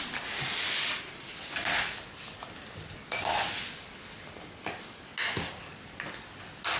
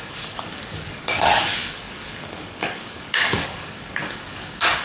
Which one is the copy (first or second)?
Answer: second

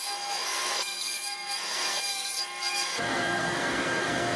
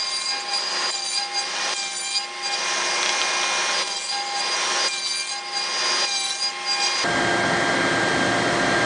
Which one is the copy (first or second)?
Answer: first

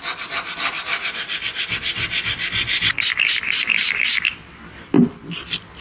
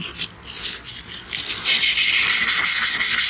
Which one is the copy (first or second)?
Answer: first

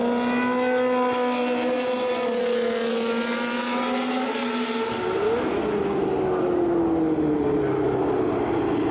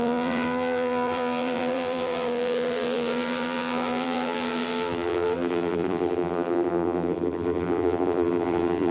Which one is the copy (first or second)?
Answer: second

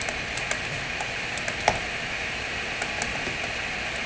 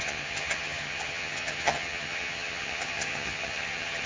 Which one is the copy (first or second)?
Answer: second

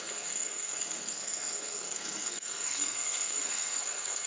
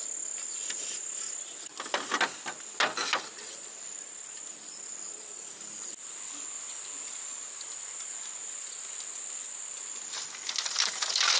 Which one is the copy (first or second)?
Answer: first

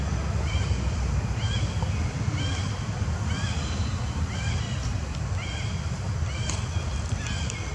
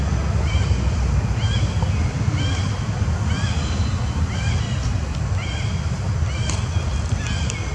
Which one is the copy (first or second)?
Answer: first